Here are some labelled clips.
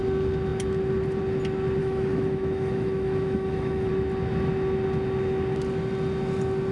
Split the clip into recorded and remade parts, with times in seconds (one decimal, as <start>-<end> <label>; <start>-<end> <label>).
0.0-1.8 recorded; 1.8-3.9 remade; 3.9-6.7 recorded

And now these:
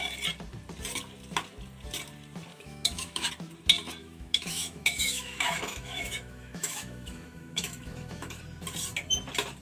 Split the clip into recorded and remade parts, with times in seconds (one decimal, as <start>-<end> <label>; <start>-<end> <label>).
0.0-2.5 recorded; 2.5-3.3 remade; 3.3-4.0 recorded; 4.0-8.4 remade; 8.4-9.6 recorded

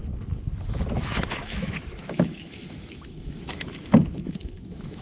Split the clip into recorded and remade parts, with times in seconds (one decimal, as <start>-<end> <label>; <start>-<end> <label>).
0.0-1.2 recorded; 1.2-5.0 remade

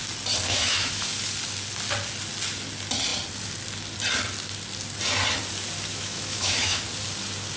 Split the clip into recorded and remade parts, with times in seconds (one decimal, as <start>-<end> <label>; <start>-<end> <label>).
0.0-0.5 recorded; 0.5-1.1 remade; 1.1-5.9 recorded; 5.9-6.8 remade; 6.8-7.6 recorded

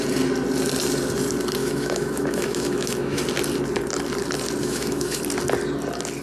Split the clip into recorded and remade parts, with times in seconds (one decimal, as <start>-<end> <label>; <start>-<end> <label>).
0.0-1.6 recorded; 1.6-3.2 remade; 3.2-4.6 recorded; 4.6-5.2 remade; 5.2-6.2 recorded